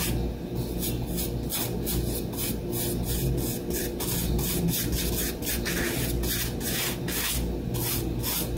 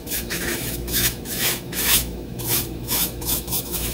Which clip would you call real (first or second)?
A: first